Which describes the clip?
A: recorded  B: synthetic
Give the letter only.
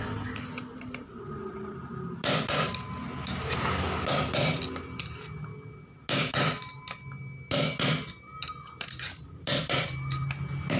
A